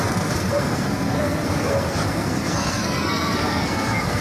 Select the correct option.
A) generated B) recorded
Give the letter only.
A